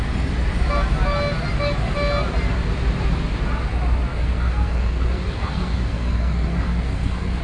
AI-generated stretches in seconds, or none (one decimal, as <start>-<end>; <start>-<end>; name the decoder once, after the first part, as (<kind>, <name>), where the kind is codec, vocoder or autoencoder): 4.1-7.4 (codec, SNAC)